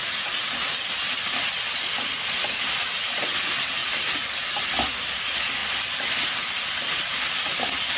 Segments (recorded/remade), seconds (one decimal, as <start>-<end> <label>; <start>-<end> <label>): 0.0-8.0 recorded